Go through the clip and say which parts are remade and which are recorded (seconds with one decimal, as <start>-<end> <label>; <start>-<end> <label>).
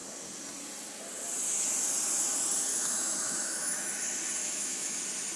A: 0.0-2.7 recorded; 2.7-3.9 remade; 3.9-4.4 recorded; 4.4-5.0 remade; 5.0-5.4 recorded